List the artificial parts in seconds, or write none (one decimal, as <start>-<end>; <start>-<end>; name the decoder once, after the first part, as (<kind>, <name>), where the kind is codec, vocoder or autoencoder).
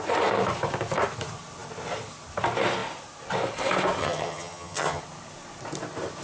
4.0-5.0 (vocoder, HiFi-GAN)